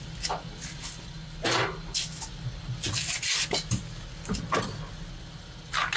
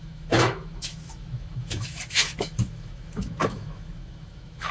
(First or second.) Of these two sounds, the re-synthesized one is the second